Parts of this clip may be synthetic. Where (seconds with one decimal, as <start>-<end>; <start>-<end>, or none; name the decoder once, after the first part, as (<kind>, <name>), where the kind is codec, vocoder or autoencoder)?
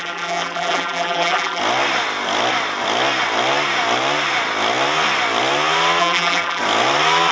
0.0-1.6 (vocoder, BigVGAN v2); 6.0-6.6